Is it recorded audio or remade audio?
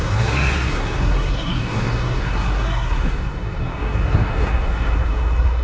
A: remade